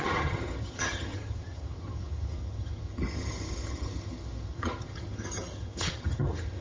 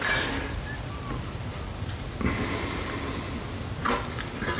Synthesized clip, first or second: first